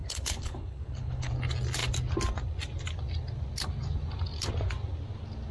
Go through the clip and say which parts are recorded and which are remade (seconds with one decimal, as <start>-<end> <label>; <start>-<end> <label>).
0.0-1.3 remade; 1.3-5.5 recorded